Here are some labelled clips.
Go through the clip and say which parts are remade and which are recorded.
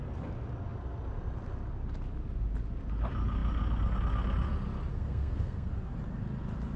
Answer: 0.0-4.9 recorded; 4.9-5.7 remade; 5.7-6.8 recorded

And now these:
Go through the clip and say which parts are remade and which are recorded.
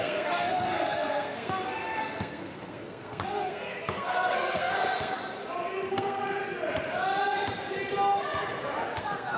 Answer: 0.0-5.2 remade; 5.2-5.9 recorded; 5.9-6.4 remade; 6.4-9.0 recorded; 9.0-9.4 remade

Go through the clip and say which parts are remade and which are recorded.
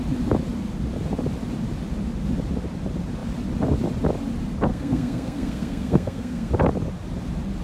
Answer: 0.0-4.7 recorded; 4.7-6.5 remade; 6.5-7.6 recorded